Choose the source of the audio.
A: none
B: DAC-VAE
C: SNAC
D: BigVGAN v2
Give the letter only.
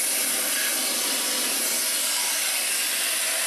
D